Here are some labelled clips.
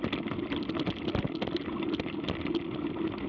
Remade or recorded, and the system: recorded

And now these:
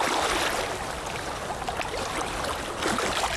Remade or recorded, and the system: recorded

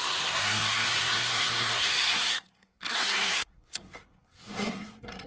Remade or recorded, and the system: remade, codec, SNAC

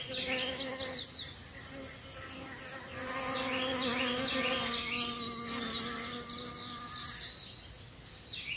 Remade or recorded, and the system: recorded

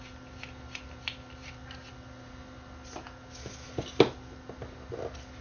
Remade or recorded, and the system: recorded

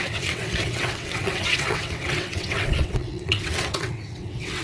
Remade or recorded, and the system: remade, vocoder, WaveNeXt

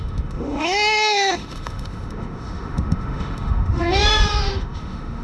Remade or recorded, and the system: remade, autoencoder, DAC-VAE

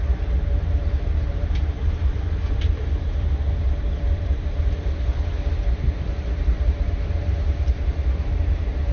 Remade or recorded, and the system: remade, vocoder, BigVGAN v2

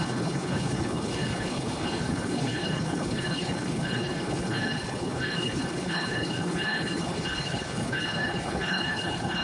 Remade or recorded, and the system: remade, codec, HILCodec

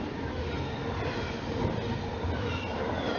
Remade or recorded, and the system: recorded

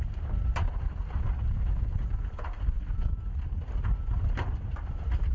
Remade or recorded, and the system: recorded